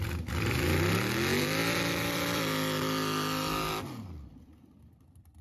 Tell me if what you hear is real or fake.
fake